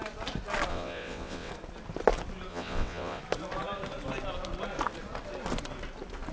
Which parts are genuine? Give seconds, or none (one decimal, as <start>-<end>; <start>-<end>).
0.0-0.7; 1.5-2.5; 3.2-6.3